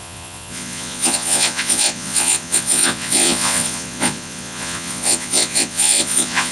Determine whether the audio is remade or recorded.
remade